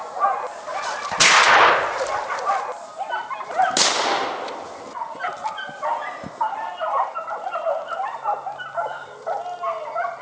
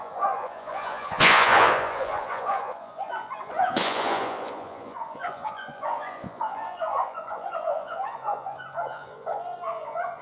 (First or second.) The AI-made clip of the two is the second